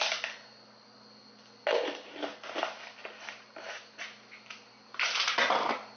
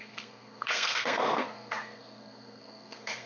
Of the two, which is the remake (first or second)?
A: second